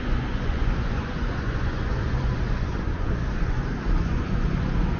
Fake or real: fake